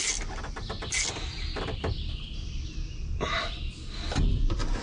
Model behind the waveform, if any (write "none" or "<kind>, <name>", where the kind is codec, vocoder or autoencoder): vocoder, BigVGAN v2